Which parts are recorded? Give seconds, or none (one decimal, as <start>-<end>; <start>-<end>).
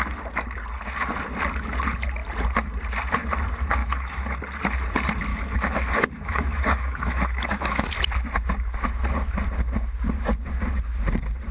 0.0-3.8; 4.4-5.3; 7.9-11.5